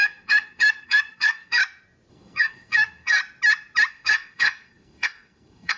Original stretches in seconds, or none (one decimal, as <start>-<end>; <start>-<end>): 1.6-2.1; 3.2-3.9